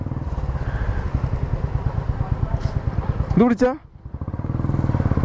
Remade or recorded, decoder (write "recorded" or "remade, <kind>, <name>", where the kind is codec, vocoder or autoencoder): recorded